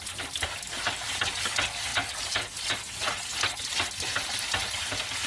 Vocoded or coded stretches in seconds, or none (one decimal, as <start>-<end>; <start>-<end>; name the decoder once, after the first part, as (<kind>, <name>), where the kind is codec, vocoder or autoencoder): none